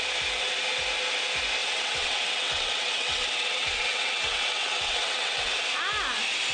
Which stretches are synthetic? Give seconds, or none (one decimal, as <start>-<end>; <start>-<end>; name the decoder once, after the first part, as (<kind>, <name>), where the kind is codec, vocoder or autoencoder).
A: 1.6-5.5 (vocoder, WaveNeXt)